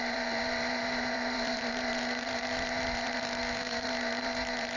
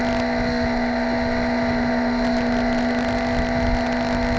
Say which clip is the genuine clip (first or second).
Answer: second